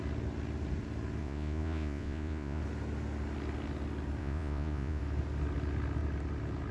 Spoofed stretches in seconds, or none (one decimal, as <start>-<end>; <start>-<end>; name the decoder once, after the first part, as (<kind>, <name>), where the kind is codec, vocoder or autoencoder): 1.2-2.6 (vocoder, Vocos); 4.2-5.0